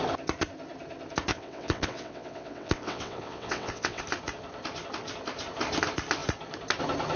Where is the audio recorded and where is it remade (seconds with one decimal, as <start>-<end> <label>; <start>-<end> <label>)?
0.0-1.3 recorded; 1.3-4.0 remade; 4.0-7.2 recorded